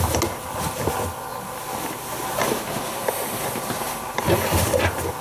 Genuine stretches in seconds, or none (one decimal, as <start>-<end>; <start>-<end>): 0.0-5.2